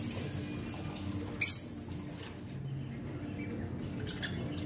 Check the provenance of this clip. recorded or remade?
recorded